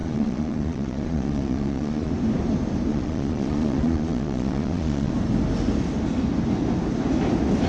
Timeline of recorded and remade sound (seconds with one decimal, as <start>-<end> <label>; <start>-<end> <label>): 0.0-2.1 remade; 2.1-2.9 recorded; 2.9-5.1 remade; 5.1-7.7 recorded

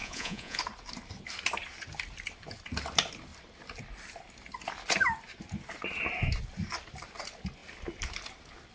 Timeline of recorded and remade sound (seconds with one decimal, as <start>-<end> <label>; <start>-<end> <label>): 0.0-0.6 remade; 0.6-8.7 recorded

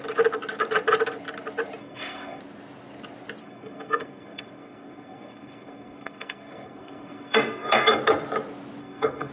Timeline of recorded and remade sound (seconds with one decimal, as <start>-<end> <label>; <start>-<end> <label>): 0.0-1.8 recorded; 1.8-2.4 remade; 2.4-3.4 recorded; 3.4-8.0 remade; 8.0-8.8 recorded; 8.8-9.3 remade

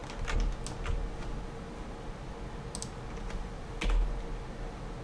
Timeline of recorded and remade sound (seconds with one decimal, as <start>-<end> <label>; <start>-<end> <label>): 0.0-5.0 recorded

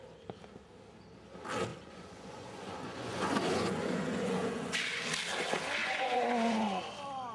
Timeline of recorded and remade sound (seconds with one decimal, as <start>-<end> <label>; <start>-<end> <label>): 0.0-1.7 recorded; 1.7-5.0 remade; 5.0-5.8 recorded; 5.8-6.8 remade; 6.8-7.3 recorded

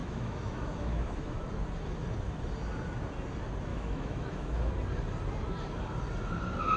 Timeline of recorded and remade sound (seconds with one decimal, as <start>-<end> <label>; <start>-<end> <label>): 0.0-1.5 remade; 1.5-3.7 recorded; 3.7-4.7 remade; 4.7-6.8 recorded

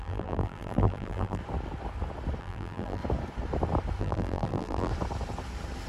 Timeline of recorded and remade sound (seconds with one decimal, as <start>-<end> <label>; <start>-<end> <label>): 0.0-1.4 remade; 1.4-2.4 recorded; 2.4-3.0 remade; 3.0-4.0 recorded; 4.0-4.9 remade; 4.9-5.9 recorded